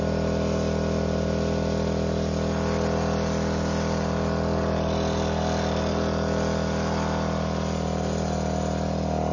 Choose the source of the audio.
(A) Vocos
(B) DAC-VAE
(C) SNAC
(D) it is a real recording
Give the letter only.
D